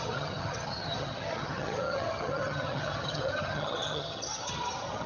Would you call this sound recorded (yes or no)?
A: no